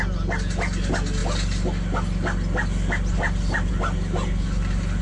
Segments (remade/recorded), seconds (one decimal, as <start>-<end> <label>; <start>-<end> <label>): 0.0-5.0 recorded